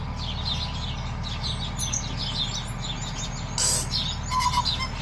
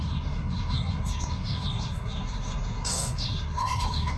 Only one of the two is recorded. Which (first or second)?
first